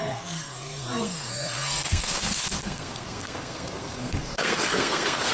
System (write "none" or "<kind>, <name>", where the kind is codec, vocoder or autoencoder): codec, SNAC